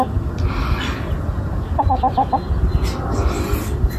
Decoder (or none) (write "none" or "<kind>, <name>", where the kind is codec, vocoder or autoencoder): none